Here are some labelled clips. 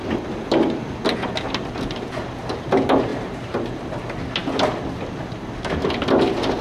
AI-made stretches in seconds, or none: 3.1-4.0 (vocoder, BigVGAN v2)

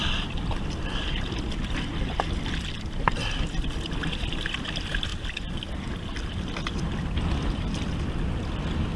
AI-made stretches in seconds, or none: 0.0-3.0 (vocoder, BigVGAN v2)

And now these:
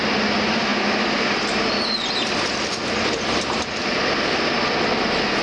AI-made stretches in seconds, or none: none

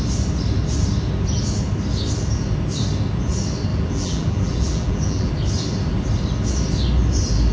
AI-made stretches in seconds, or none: 3.7-5.3 (vocoder, BigVGAN v2)